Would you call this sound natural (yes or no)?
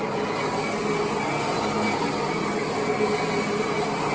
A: yes